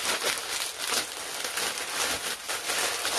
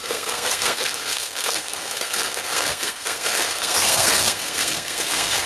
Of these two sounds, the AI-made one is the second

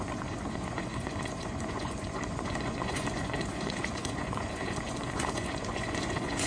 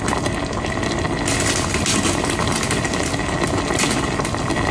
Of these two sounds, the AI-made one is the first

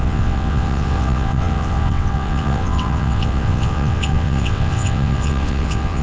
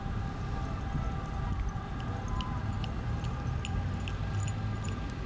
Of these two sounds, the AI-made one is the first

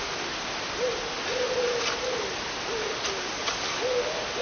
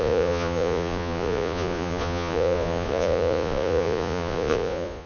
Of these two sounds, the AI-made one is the second